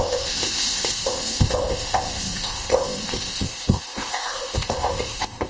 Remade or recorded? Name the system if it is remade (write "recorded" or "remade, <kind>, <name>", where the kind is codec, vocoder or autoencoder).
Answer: remade, codec, ZipCodec